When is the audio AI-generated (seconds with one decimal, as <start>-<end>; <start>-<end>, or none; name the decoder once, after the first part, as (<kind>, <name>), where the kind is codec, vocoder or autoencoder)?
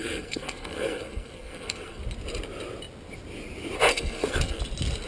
0.0-2.0 (codec, SNAC); 3.9-4.6